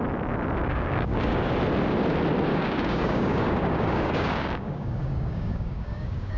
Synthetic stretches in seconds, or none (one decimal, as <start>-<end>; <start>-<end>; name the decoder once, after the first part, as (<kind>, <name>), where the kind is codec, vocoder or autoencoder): 0.6-1.5 (codec, DAC); 2.5-6.4